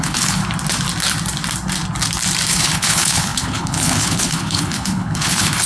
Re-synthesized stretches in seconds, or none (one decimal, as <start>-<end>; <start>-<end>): 0.0-0.4; 2.5-5.7